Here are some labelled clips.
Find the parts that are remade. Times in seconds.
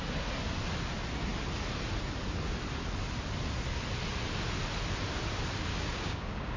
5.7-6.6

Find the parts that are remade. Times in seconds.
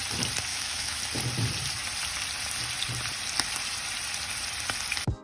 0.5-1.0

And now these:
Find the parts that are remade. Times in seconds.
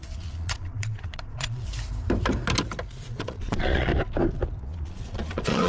0.0-1.7; 2.9-3.9; 4.6-5.7